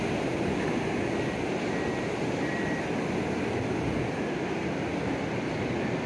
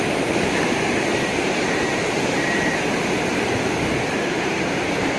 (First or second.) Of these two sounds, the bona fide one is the first